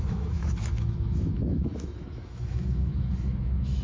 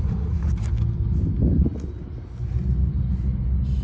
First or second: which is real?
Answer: second